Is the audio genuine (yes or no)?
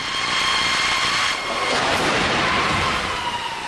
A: no